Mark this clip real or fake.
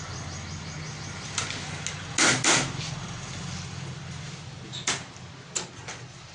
real